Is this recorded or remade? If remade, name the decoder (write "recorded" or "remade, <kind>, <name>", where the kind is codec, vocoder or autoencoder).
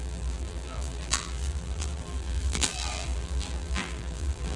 remade, vocoder, BigVGAN v2